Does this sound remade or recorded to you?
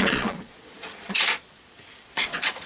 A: remade